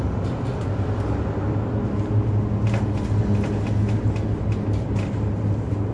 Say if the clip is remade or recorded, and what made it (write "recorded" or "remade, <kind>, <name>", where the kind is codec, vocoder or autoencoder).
recorded